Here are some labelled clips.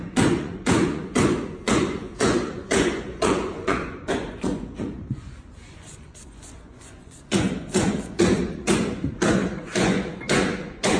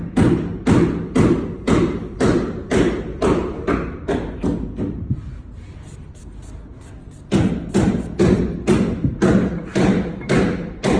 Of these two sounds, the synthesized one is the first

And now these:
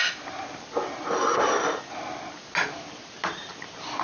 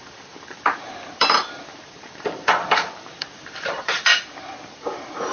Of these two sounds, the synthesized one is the second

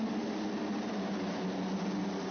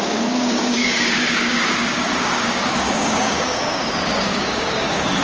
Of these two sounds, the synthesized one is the second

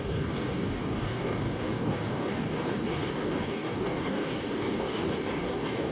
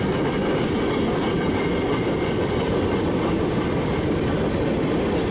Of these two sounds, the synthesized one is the first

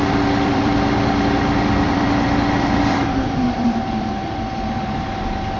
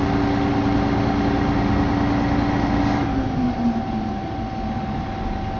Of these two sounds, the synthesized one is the first